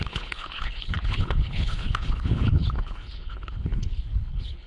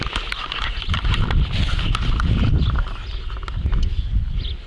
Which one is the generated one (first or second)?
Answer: first